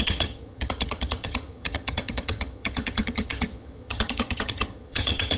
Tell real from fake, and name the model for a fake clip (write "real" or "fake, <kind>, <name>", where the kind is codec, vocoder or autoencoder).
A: fake, vocoder, HiFi-GAN